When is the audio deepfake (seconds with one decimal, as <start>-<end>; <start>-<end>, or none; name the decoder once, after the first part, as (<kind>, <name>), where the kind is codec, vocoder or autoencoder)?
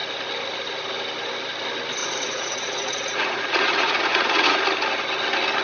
2.0-4.6 (vocoder, Vocos)